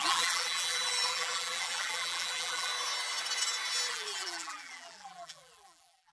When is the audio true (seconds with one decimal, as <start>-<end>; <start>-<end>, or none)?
2.7-3.9